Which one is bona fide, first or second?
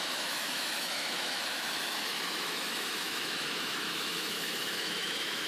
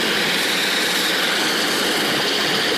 second